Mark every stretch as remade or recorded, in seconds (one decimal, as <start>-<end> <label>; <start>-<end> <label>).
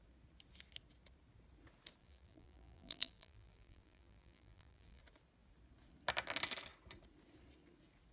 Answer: 0.0-2.0 recorded; 2.0-5.0 remade; 5.0-8.1 recorded